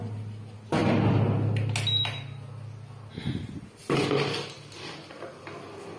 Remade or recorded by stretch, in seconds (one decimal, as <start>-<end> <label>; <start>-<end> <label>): 0.0-6.0 recorded